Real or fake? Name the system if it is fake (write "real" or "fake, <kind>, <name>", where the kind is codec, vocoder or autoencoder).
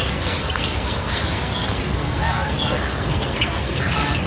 fake, codec, SNAC